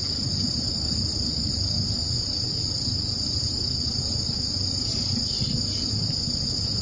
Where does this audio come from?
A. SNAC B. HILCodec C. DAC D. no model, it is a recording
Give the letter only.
D